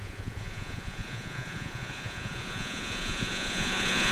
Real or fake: fake